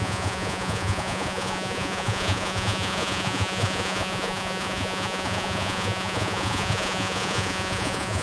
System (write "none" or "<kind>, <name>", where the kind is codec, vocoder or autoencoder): vocoder, Vocos